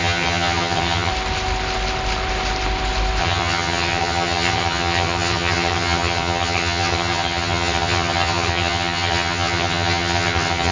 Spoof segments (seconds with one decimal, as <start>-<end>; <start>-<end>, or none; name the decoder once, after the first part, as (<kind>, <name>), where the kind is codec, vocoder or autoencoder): 0.0-1.1 (vocoder, HiFi-GAN); 3.2-10.7